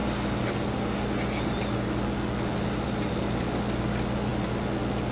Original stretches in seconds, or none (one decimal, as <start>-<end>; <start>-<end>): 0.0-5.1

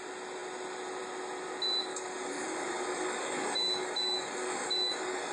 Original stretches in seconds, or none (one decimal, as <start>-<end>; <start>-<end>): 0.0-1.9

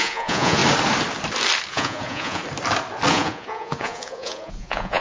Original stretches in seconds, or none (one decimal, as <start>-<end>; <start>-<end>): 0.6-1.7; 2.4-3.1

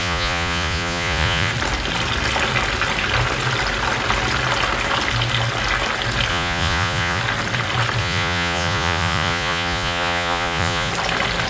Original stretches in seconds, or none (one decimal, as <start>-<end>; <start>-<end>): 1.5-6.3; 7.2-8.0; 10.9-11.5